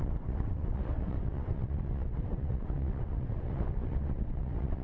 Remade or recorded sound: remade